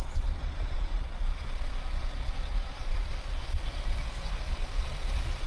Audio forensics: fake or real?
fake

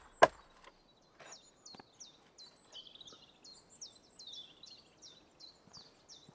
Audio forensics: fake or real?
real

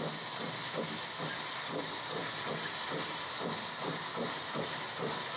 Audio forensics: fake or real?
real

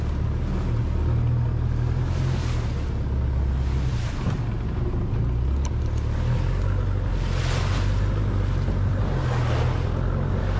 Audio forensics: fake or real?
real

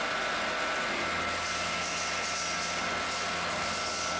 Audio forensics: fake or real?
real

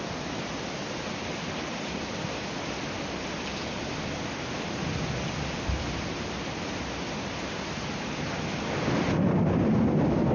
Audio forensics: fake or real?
real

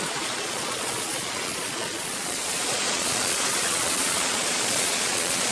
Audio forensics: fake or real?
fake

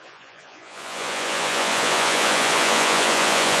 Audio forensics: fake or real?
fake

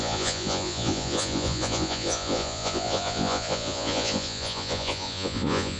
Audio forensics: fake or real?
fake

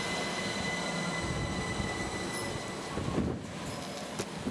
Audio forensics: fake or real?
real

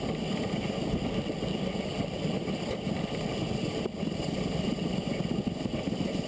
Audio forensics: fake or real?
real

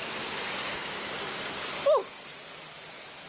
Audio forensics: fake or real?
real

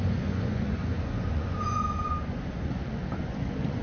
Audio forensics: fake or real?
fake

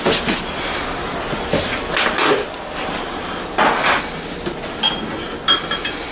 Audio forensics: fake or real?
real